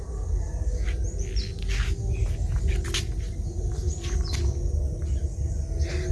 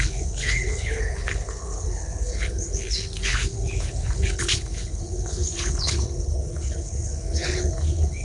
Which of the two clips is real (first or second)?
first